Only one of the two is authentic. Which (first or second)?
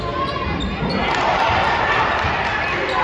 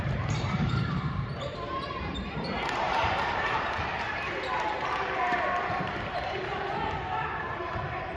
first